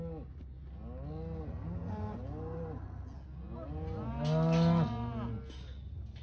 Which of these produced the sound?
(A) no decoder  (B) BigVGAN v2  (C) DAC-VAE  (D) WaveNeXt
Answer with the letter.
A